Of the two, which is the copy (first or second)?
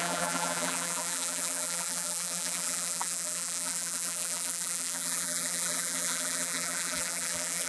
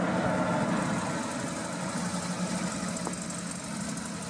first